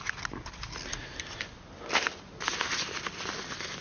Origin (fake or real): real